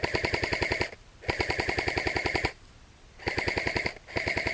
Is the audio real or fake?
real